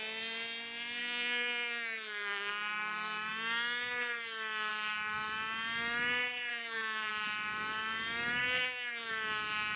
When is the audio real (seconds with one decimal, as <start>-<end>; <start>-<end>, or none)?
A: 0.0-1.0; 2.5-6.5; 7.1-8.4; 9.1-9.8